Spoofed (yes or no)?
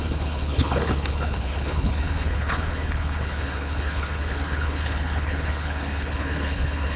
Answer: yes